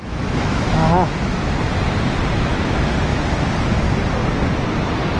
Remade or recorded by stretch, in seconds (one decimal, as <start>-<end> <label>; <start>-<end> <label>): 0.0-0.8 remade; 0.8-2.3 recorded; 2.3-3.1 remade; 3.1-5.2 recorded